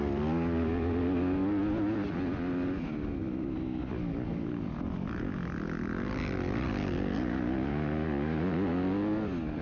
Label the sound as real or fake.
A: real